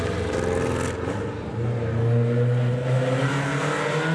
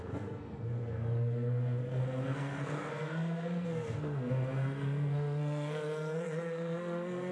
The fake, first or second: second